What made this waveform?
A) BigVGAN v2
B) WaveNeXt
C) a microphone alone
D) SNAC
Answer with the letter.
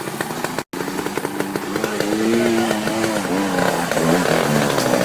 C